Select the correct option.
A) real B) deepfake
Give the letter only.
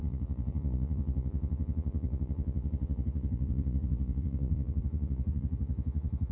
B